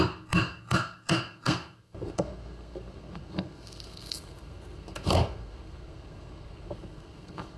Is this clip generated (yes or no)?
yes